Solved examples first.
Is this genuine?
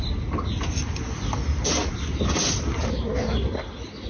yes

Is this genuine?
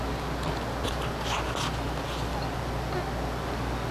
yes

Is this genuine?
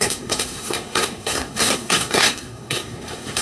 no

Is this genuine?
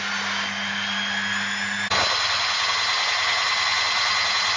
yes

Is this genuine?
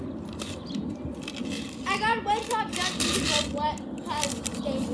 yes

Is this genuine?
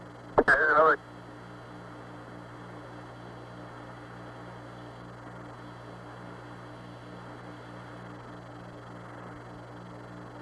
yes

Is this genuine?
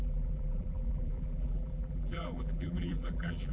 no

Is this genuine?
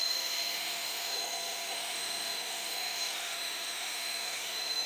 no